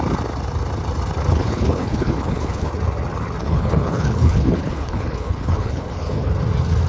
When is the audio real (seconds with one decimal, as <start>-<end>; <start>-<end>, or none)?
0.0-1.3; 2.7-3.4; 6.3-6.9

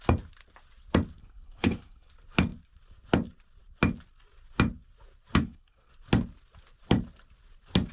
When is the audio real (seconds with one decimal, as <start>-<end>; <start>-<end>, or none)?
0.0-1.2; 2.1-5.4; 5.9-7.9